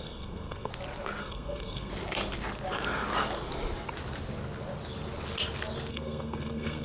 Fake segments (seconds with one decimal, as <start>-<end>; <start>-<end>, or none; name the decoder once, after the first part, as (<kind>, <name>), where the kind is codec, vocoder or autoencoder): 0.0-0.7 (codec, SNAC); 1.2-1.9; 5.9-6.8